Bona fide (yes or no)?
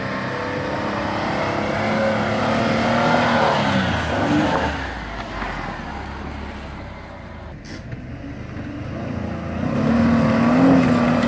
yes